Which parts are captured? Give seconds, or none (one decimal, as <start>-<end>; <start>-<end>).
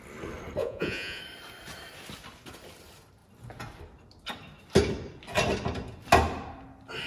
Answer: 0.0-0.6; 1.2-7.1